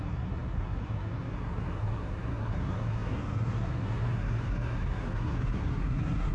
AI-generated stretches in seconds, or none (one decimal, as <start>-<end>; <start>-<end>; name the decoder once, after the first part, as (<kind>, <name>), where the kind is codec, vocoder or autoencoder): 0.0-6.3 (codec, SNAC)